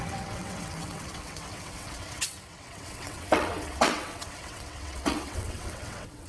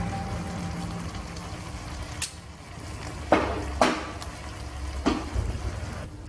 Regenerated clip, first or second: first